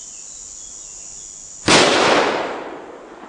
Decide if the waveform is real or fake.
real